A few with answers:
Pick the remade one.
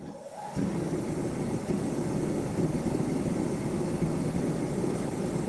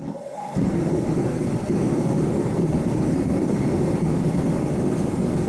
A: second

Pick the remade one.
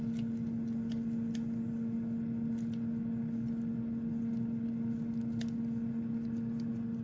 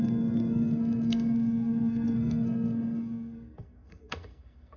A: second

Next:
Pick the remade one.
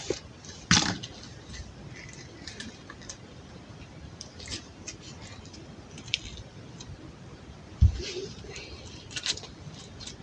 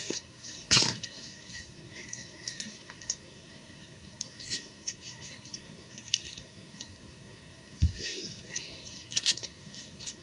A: second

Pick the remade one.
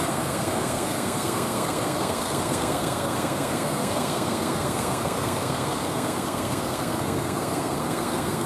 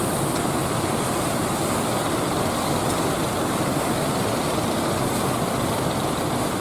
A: first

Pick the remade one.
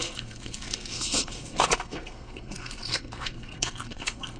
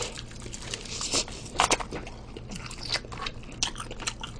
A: first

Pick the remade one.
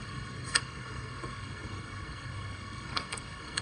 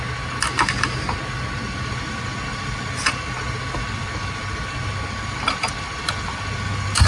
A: first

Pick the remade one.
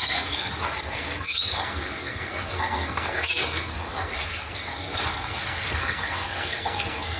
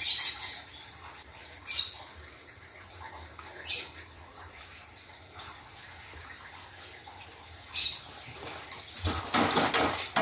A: first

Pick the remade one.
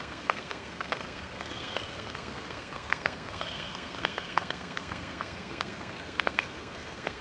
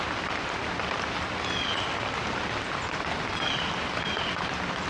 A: first